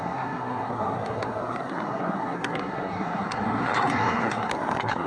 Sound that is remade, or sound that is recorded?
remade